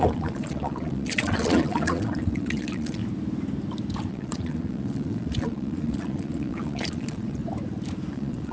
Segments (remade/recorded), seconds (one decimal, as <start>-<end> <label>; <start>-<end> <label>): 0.0-3.0 remade; 3.0-4.1 recorded; 4.1-7.4 remade; 7.4-8.1 recorded; 8.1-8.5 remade